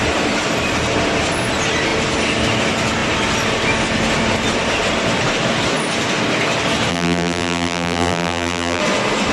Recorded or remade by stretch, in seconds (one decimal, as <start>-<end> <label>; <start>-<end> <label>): 0.0-6.9 recorded; 6.9-8.8 remade; 8.8-9.3 recorded